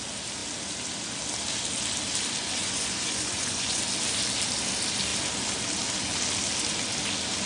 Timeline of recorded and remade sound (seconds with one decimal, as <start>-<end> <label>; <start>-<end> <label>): 0.0-2.4 recorded; 2.4-3.8 remade; 3.8-7.5 recorded

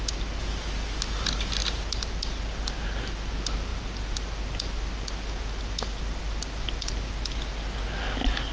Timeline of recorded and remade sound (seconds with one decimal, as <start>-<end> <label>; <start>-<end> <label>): 0.0-8.5 recorded

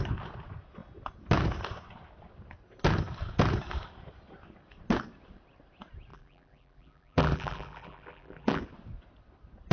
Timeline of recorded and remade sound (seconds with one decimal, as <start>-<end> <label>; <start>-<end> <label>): 0.0-6.1 recorded; 6.1-8.6 remade; 8.6-9.7 recorded

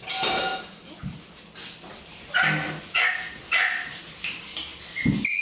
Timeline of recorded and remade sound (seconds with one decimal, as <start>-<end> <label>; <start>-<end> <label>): 0.0-5.4 recorded

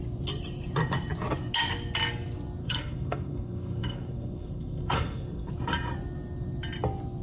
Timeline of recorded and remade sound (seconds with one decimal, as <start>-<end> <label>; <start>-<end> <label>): 0.0-2.6 recorded; 2.6-5.5 remade; 5.5-7.2 recorded

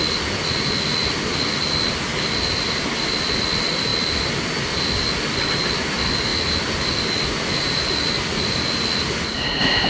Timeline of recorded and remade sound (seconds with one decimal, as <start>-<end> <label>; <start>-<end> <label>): 0.0-9.9 recorded

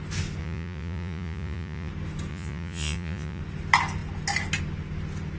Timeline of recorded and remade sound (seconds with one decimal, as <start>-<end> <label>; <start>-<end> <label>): 0.0-0.4 recorded; 0.4-1.9 remade; 1.9-2.3 recorded; 2.3-3.4 remade; 3.4-5.4 recorded

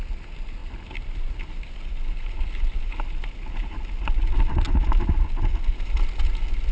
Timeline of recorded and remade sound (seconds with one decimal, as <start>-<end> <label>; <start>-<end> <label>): 0.0-0.6 recorded; 0.6-2.5 remade; 2.5-6.7 recorded